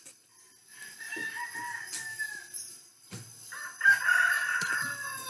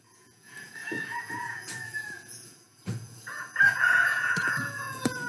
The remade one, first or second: second